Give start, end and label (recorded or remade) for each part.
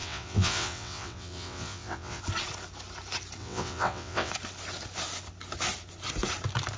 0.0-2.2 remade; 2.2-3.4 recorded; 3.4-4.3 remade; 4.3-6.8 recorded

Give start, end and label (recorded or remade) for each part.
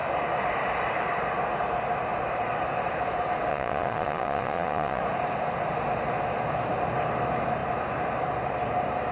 0.0-3.5 recorded; 3.5-5.0 remade; 5.0-9.1 recorded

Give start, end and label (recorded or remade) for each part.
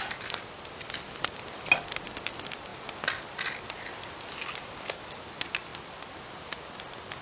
0.0-7.2 recorded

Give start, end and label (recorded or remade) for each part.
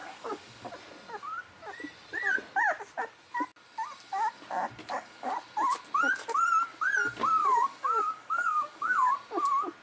0.0-0.7 remade; 0.7-4.8 recorded; 4.8-5.3 remade; 5.3-7.4 recorded; 7.4-9.1 remade; 9.1-9.8 recorded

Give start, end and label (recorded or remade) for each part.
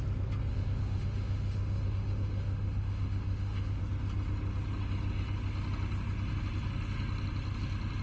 0.0-0.5 recorded; 0.5-3.8 remade; 3.8-8.0 recorded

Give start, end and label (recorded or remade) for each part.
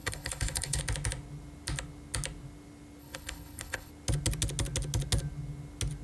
0.0-0.8 remade; 0.8-3.0 recorded; 3.0-3.9 remade; 3.9-6.0 recorded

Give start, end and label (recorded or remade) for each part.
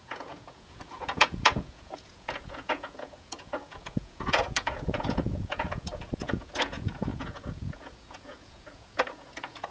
0.0-9.7 remade